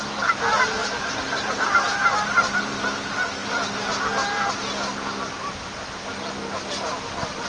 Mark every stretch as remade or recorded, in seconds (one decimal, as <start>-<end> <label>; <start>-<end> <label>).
0.0-0.8 recorded; 0.8-2.8 remade; 2.8-7.5 recorded

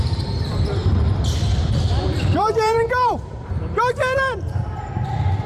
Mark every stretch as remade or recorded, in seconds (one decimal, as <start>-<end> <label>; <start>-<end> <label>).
0.0-0.8 remade; 0.8-1.5 recorded; 1.5-5.5 remade

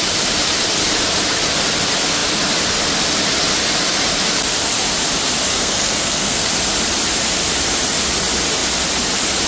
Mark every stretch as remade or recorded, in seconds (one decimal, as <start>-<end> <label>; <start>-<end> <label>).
0.0-5.5 recorded; 5.5-6.5 remade; 6.5-9.5 recorded

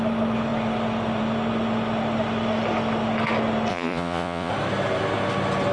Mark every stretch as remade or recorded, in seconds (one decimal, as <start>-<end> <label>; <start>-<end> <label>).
0.0-3.7 recorded; 3.7-4.5 remade; 4.5-5.7 recorded

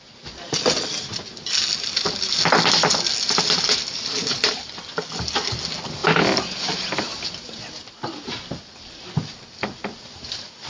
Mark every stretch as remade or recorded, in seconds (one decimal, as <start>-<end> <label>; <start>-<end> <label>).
0.0-4.2 recorded; 4.2-4.7 remade; 4.7-10.7 recorded

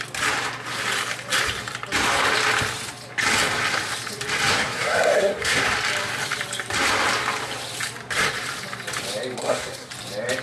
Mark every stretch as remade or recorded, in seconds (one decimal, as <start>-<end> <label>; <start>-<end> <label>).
0.0-4.5 recorded; 4.5-5.6 remade; 5.6-9.4 recorded; 9.4-9.9 remade; 9.9-10.4 recorded

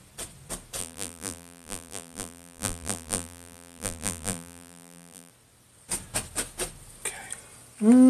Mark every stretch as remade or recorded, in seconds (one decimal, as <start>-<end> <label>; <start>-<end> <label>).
0.0-0.8 recorded; 0.8-5.3 remade; 5.3-8.1 recorded